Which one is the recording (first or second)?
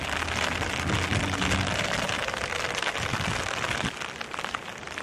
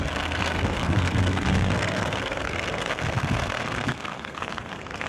first